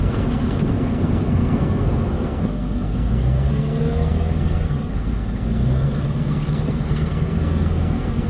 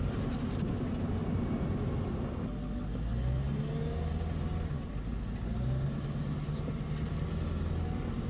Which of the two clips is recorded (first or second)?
second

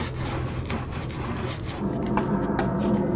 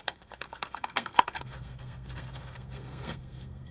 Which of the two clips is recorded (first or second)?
first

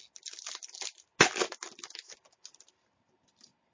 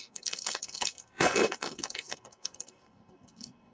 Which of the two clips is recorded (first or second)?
first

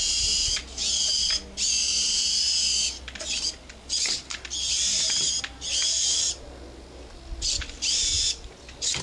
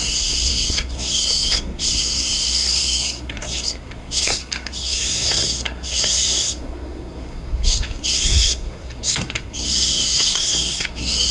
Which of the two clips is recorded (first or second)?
first